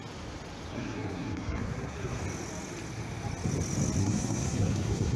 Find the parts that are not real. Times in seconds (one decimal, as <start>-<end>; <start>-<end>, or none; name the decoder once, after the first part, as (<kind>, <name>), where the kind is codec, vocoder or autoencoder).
0.7-2.2 (codec, SNAC); 4.0-5.2